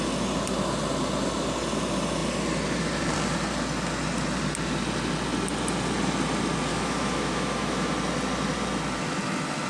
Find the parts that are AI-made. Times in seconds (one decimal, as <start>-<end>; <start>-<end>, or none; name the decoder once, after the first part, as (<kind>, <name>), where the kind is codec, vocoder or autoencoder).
6.7-7.9 (autoencoder, DAC-VAE)